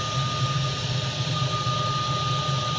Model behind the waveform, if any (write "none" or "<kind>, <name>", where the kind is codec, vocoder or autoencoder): none